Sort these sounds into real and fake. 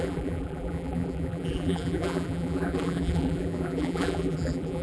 fake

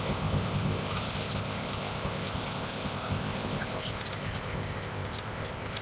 fake